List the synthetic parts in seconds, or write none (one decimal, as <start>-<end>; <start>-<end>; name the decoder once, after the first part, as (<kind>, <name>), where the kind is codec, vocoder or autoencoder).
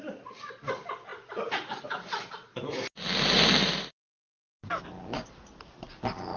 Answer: none